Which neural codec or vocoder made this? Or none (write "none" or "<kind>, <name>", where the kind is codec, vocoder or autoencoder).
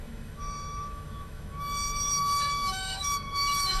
autoencoder, DAC-VAE